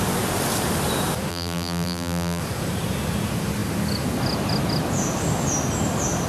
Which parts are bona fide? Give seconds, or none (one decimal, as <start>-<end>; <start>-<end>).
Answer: 0.0-1.3; 2.4-6.3